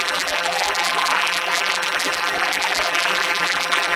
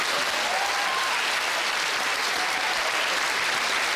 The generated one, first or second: first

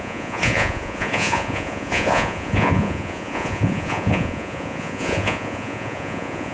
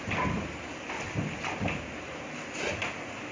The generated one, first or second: first